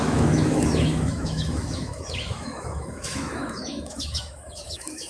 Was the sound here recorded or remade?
remade